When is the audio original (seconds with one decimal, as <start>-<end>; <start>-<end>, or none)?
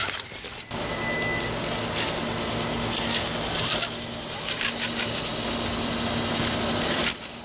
0.0-7.4